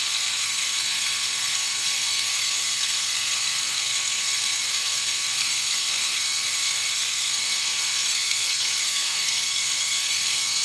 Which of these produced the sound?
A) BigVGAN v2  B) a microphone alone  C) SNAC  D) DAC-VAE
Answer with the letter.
C